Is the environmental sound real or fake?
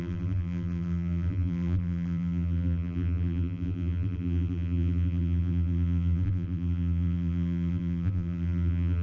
fake